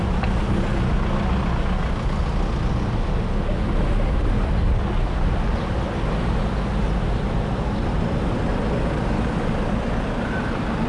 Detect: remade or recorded recorded